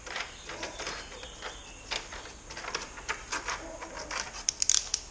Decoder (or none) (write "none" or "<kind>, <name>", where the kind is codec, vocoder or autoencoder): none